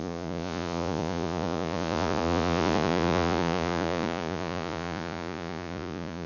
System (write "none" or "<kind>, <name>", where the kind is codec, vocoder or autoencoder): vocoder, Vocos